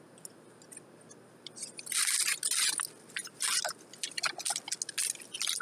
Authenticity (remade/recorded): recorded